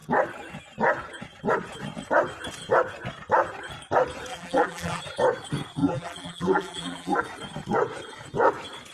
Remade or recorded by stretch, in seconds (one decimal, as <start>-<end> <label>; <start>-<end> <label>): 0.0-4.3 recorded; 4.3-5.0 remade; 5.0-5.8 recorded; 5.8-7.2 remade; 7.2-8.9 recorded